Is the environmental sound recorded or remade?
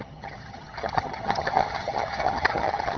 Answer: remade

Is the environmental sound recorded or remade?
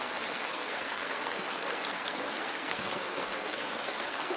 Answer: remade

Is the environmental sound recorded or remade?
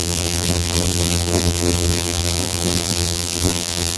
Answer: remade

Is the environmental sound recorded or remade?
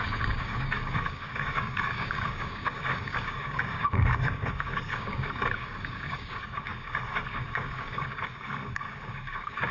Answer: remade